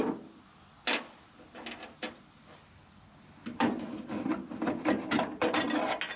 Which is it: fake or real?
real